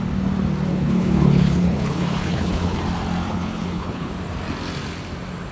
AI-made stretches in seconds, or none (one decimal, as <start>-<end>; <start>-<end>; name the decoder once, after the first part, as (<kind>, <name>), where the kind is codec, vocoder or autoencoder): 0.7-2.8 (codec, HILCodec); 3.3-4.1